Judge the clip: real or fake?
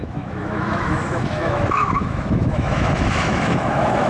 fake